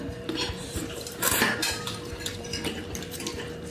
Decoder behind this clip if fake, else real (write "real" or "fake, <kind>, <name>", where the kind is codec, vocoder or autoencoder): fake, vocoder, BigVGAN v2